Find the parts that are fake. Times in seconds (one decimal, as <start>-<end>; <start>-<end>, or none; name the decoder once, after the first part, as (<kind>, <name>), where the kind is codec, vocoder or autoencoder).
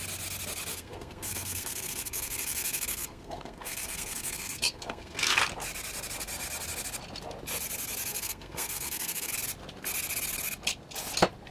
0.7-5.4 (codec, SNAC); 8.1-9.3